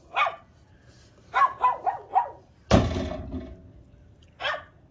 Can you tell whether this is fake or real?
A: real